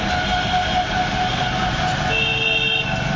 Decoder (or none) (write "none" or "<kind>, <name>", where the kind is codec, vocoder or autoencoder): none